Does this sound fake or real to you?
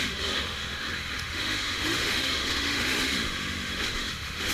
fake